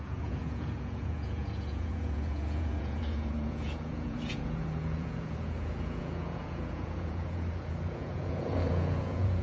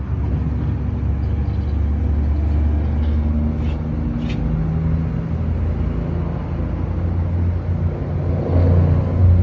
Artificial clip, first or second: first